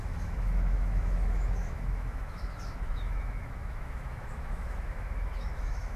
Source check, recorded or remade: remade